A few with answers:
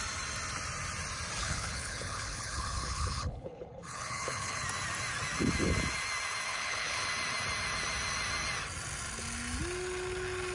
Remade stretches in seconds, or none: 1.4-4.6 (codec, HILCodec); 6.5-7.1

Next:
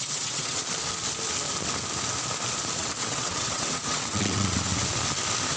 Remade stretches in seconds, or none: 0.0-0.6 (vocoder, WaveNeXt); 2.8-4.7